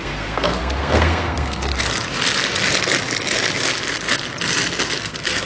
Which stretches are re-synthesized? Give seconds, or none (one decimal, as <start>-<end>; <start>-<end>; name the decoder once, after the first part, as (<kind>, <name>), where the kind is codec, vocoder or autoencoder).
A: 0.0-1.7 (codec, SNAC); 5.0-5.5